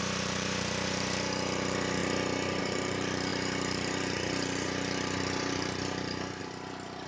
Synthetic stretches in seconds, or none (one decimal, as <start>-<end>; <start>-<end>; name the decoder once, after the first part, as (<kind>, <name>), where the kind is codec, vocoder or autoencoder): 0.0-2.0 (vocoder, BigVGAN v2); 2.6-7.1

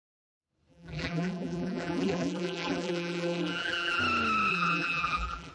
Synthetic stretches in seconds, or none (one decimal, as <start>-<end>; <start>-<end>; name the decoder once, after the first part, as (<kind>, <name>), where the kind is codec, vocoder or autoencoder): 0.7-4.0 (vocoder, BigVGAN v2); 4.5-5.5

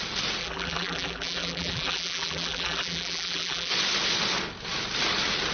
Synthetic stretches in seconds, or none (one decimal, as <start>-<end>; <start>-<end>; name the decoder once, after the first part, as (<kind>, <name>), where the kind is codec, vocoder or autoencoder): 0.4-3.7 (vocoder, BigVGAN v2)

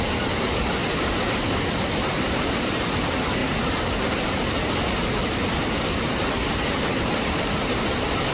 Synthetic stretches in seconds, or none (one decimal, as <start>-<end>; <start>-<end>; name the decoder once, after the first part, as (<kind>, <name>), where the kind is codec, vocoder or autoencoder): 0.0-0.8 (vocoder, BigVGAN v2); 2.2-8.3